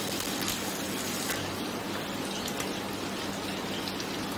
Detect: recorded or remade recorded